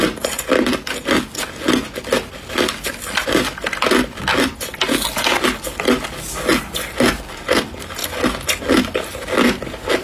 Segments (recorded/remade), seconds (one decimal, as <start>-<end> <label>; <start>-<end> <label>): 0.0-10.0 recorded